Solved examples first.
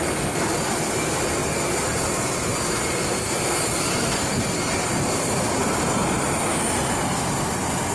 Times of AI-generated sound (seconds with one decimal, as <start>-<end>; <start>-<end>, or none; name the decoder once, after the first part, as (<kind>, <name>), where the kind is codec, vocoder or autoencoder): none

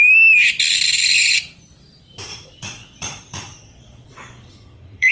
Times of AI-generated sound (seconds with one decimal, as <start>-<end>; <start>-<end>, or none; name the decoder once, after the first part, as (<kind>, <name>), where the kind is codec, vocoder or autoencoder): 2.3-5.1 (vocoder, Vocos)

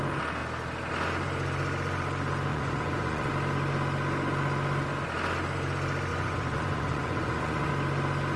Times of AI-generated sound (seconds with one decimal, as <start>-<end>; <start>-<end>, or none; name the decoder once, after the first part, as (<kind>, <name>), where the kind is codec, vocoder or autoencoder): 2.5-3.3 (vocoder, Vocos); 6.1-7.7